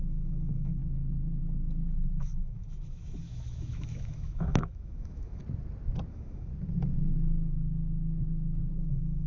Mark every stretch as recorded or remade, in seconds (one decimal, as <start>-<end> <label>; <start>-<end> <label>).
0.0-0.8 remade; 0.8-2.2 recorded; 2.2-5.4 remade; 5.4-6.1 recorded; 6.1-6.5 remade; 6.5-8.8 recorded; 8.8-9.3 remade